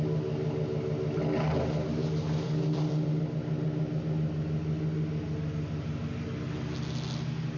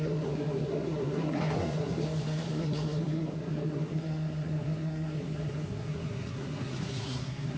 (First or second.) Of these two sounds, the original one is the first